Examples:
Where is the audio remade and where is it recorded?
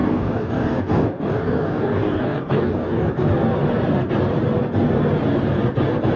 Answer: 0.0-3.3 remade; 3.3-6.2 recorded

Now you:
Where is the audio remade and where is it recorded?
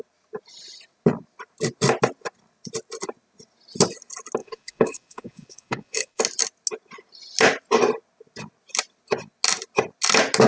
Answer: 0.0-4.4 recorded; 4.4-6.2 remade; 6.2-10.5 recorded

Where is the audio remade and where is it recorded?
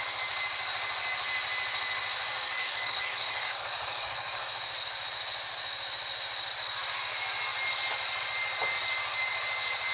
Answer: 0.0-2.3 recorded; 2.3-4.6 remade; 4.6-9.9 recorded